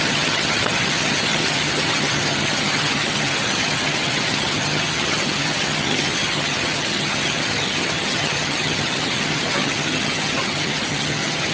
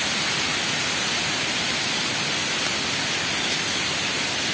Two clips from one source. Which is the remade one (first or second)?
first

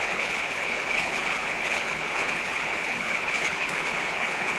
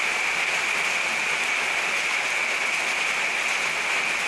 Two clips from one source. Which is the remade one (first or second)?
first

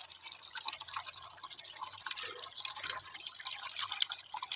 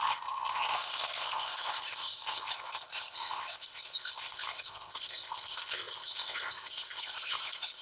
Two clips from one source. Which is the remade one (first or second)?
second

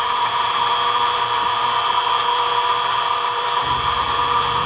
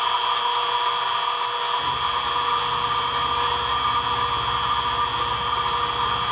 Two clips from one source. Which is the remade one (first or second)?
first